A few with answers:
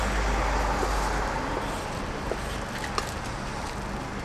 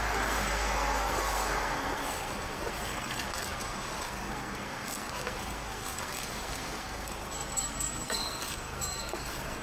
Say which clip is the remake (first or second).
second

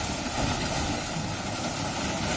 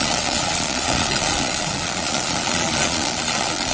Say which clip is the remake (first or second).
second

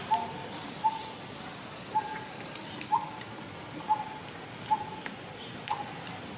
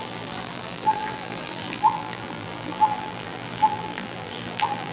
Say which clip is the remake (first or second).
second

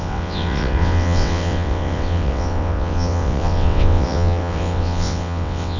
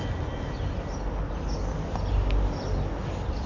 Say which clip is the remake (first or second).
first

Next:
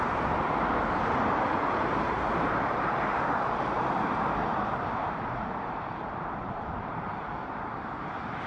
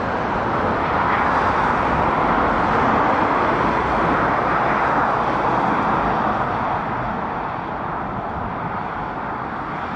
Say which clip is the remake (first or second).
first